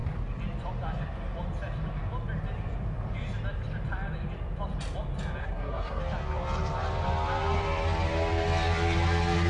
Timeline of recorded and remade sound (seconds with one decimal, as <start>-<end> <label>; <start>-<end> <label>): 0.0-5.4 recorded; 5.4-6.0 remade; 6.0-9.5 recorded